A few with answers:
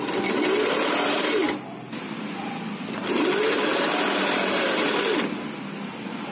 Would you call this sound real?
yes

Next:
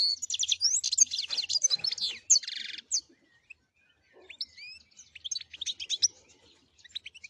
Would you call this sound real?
yes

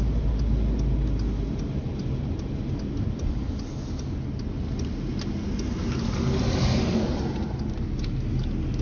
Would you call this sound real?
yes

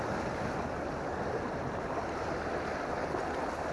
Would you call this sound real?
yes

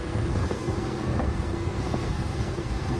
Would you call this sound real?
no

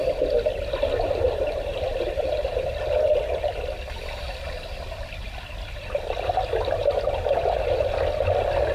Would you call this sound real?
no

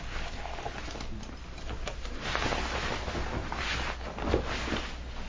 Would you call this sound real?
yes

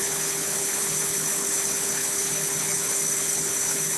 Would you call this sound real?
no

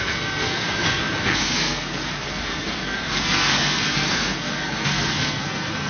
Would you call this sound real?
no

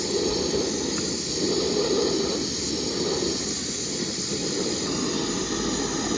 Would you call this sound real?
yes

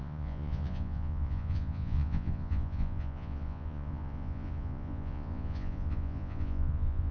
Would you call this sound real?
no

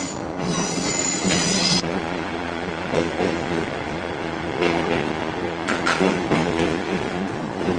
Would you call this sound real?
no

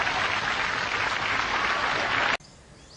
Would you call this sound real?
yes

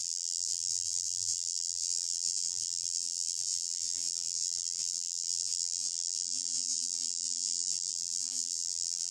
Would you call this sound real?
no